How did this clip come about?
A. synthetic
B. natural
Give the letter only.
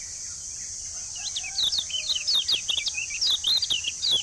B